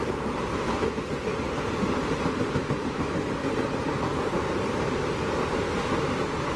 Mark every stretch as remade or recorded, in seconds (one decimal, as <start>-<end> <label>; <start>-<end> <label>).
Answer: 0.0-4.0 remade; 4.0-6.6 recorded